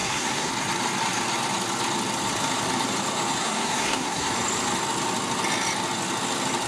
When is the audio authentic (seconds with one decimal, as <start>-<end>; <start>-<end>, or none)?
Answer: 0.5-3.4; 4.3-6.7